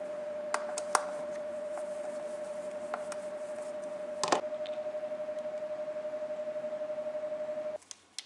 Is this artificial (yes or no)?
no